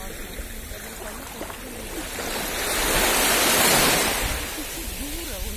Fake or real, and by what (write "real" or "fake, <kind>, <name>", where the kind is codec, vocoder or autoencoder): real